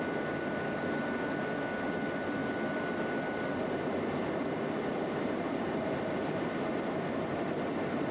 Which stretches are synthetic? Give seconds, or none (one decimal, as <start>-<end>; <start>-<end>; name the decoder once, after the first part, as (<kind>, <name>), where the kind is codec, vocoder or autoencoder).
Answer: 4.9-8.1 (vocoder, BigVGAN v2)